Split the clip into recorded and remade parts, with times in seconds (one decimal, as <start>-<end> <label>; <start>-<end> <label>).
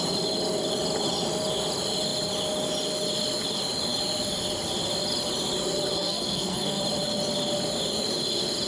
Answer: 0.0-6.0 recorded; 6.0-6.8 remade; 6.8-8.7 recorded